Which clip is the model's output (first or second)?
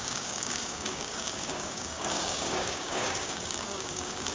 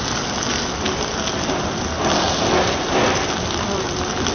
first